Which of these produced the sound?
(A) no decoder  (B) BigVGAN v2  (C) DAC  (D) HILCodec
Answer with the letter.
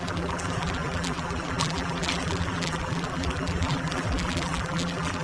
B